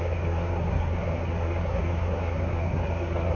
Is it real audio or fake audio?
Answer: fake